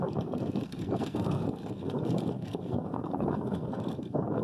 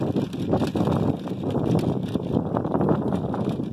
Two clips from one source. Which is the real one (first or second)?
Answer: second